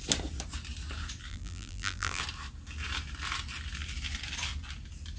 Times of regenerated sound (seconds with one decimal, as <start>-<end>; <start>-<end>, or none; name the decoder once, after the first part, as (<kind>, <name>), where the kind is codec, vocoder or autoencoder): 1.3-2.2 (vocoder, BigVGAN v2)